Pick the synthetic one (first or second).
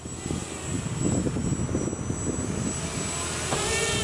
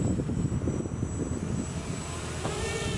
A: second